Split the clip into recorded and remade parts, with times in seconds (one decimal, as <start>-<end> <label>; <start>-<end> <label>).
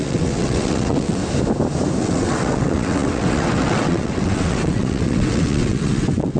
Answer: 0.0-1.2 remade; 1.2-2.0 recorded; 2.0-6.4 remade